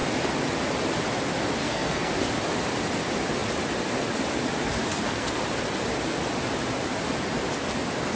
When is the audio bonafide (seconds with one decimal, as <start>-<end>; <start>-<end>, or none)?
0.0-1.6; 2.1-4.9; 5.4-8.2